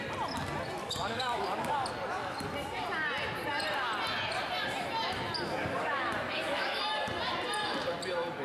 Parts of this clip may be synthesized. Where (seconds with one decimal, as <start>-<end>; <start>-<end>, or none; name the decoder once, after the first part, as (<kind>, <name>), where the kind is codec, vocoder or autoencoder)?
0.8-1.7 (codec, DAC); 5.6-6.8